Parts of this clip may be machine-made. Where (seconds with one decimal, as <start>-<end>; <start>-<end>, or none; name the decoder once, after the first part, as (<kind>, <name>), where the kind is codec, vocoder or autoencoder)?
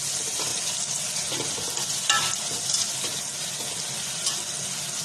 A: none